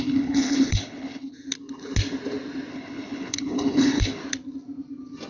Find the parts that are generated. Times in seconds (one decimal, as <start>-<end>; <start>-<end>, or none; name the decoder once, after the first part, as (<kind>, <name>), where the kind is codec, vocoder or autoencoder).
0.0-1.3 (codec, HILCodec); 2.7-4.2